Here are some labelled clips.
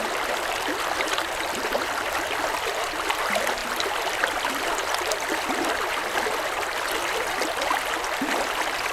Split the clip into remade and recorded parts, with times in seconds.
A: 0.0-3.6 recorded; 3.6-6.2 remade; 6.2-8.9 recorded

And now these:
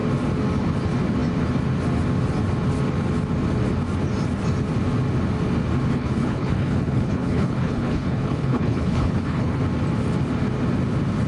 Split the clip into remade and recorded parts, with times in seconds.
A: 0.0-5.9 recorded; 5.9-9.6 remade; 9.6-11.3 recorded

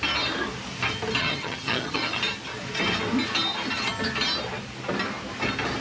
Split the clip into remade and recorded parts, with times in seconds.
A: 0.0-1.2 recorded; 1.2-2.2 remade; 2.2-5.8 recorded

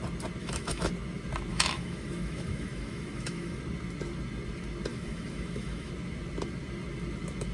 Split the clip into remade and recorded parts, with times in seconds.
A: 0.0-0.4 recorded; 0.4-0.9 remade; 0.9-1.5 recorded; 1.5-3.6 remade; 3.6-4.9 recorded; 4.9-5.9 remade; 5.9-7.5 recorded

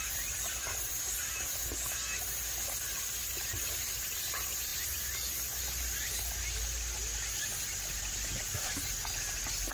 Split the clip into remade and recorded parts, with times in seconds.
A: 0.0-7.5 recorded; 7.5-8.8 remade; 8.8-9.7 recorded

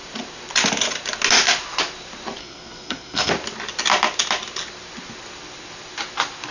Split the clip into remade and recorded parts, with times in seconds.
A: 0.0-2.4 recorded; 2.4-3.3 remade; 3.3-6.5 recorded

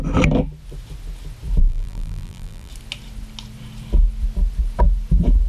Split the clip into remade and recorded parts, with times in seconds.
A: 0.0-1.6 recorded; 1.6-2.7 remade; 2.7-5.5 recorded

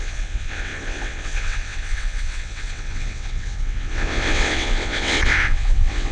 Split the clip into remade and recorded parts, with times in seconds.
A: 0.0-6.1 remade